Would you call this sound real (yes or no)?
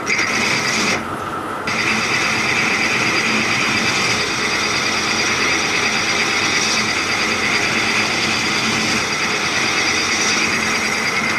yes